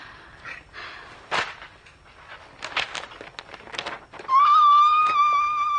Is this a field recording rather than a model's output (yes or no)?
yes